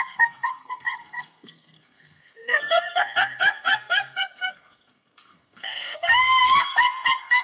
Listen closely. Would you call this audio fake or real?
fake